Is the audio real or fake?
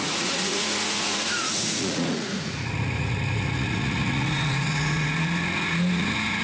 fake